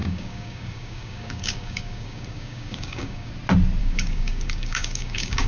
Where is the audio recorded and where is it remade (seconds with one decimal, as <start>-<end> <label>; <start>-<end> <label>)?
0.0-3.3 remade; 3.3-3.8 recorded; 3.8-5.5 remade

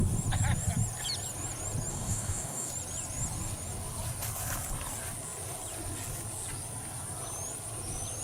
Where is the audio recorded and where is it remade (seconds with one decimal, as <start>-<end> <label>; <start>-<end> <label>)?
0.0-1.9 recorded; 1.9-2.7 remade; 2.7-8.2 recorded